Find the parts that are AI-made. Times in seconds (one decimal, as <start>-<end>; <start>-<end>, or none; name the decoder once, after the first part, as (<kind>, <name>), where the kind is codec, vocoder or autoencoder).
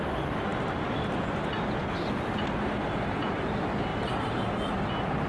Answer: none